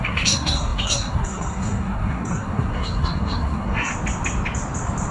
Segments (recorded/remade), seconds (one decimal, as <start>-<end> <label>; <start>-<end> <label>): 0.0-3.9 remade; 3.9-5.1 recorded